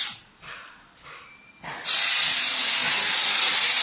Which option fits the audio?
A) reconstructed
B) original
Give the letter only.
B